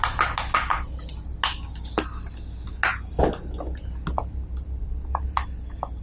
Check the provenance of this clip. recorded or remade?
recorded